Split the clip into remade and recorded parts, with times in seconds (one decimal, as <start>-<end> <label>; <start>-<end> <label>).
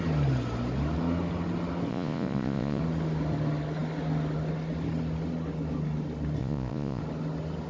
0.0-1.9 recorded; 1.9-2.8 remade; 2.8-6.4 recorded; 6.4-7.0 remade; 7.0-7.7 recorded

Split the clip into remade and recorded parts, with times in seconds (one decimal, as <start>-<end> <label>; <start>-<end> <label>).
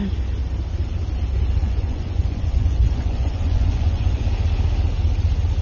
0.0-1.6 recorded; 1.6-4.3 remade; 4.3-5.6 recorded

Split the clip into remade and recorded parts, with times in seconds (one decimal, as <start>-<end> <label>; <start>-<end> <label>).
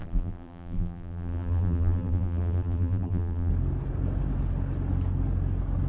0.0-3.5 remade; 3.5-5.9 recorded